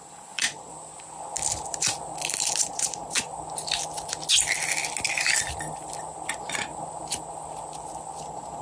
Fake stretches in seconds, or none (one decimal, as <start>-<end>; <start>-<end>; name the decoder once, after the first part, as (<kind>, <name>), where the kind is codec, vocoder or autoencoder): 0.0-0.7 (vocoder, Vocos); 2.6-3.3; 6.3-6.7; 8.2-8.6